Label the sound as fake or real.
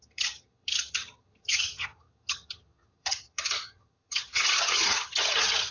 fake